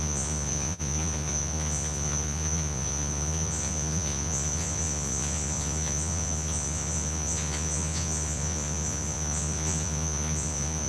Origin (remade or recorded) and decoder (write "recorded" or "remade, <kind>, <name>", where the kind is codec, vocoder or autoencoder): remade, vocoder, Vocos